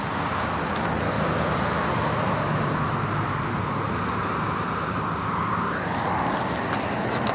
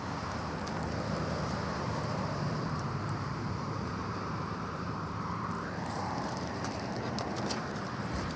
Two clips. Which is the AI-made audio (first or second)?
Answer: second